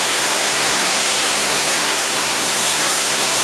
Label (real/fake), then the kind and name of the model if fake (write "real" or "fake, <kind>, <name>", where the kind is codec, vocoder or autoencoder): fake, codec, SNAC